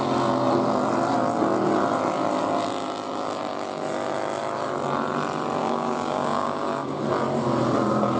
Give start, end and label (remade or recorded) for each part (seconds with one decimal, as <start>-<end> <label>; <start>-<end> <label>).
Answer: 0.0-5.6 recorded; 5.6-7.0 remade; 7.0-8.2 recorded